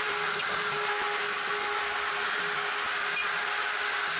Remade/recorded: recorded